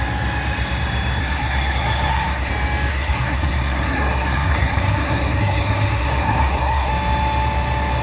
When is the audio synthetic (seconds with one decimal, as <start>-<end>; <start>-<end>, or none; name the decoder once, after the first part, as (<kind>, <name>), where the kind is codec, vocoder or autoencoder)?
1.2-2.5 (codec, SNAC); 2.9-6.9